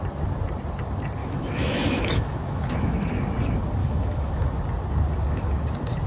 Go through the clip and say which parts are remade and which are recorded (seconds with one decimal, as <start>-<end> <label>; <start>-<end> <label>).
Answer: 0.0-1.2 recorded; 1.2-3.2 remade; 3.2-3.8 recorded; 3.8-4.5 remade; 4.5-6.1 recorded